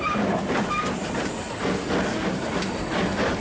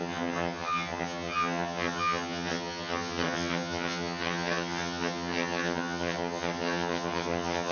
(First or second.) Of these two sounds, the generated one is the second